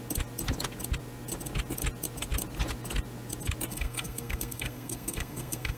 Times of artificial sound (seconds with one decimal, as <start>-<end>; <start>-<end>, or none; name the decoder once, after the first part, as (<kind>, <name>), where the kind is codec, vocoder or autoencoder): 3.7-5.8 (codec, SNAC)